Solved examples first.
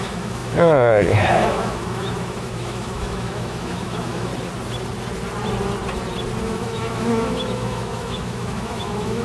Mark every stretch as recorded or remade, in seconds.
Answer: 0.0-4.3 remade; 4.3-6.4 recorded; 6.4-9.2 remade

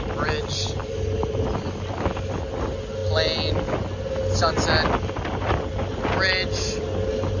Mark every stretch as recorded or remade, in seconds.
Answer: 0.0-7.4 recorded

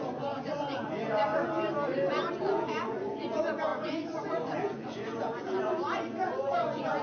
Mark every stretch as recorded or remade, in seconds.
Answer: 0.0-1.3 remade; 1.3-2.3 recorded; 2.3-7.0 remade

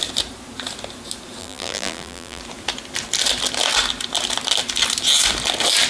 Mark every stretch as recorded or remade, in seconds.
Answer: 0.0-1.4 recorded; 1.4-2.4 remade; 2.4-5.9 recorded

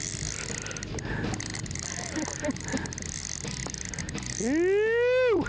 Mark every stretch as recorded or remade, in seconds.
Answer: 0.0-5.5 recorded

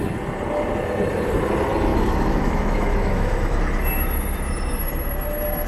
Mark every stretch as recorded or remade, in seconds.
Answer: 0.0-1.9 recorded; 1.9-3.6 remade; 3.6-5.7 recorded

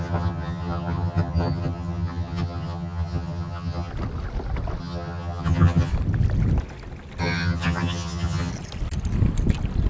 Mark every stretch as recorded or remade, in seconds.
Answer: 0.0-3.9 remade; 3.9-4.8 recorded; 4.8-5.9 remade; 5.9-7.2 recorded; 7.2-8.5 remade; 8.5-9.9 recorded